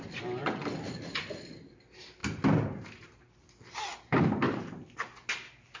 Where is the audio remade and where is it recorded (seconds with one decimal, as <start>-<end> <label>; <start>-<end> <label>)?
0.0-5.8 recorded